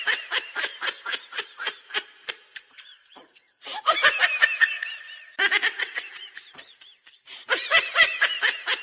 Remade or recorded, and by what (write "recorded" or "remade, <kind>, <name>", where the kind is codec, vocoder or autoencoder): remade, vocoder, BigVGAN v2